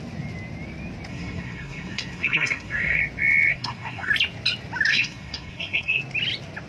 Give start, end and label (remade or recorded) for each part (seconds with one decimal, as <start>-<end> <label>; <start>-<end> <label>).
0.0-1.1 recorded; 1.1-3.0 remade; 3.0-3.5 recorded; 3.5-4.1 remade; 4.1-4.9 recorded; 4.9-6.0 remade; 6.0-6.7 recorded